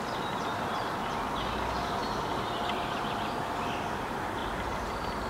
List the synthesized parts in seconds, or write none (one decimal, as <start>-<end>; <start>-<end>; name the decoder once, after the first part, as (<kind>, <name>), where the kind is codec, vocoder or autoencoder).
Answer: 0.5-1.4 (vocoder, BigVGAN v2); 2.0-3.5; 4.4-5.3